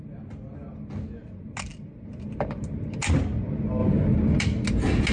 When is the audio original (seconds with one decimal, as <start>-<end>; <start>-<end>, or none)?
0.0-5.1